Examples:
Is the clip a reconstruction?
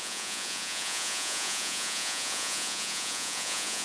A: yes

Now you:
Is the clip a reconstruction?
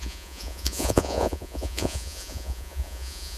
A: yes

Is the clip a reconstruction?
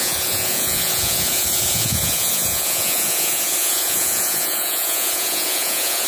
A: yes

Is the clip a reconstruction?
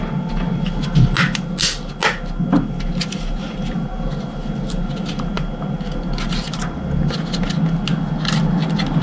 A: no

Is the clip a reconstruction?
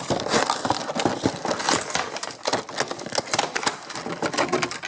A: no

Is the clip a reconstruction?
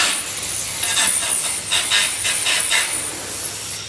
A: no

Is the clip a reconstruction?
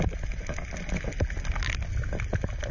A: no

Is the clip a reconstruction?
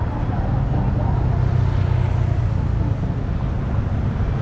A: no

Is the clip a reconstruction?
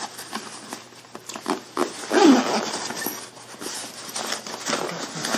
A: no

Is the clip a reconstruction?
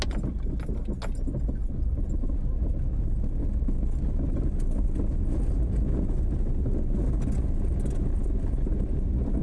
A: no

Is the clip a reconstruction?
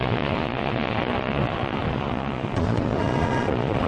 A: yes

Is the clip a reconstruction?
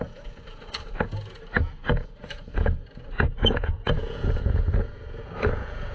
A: yes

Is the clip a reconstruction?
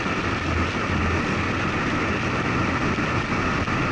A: no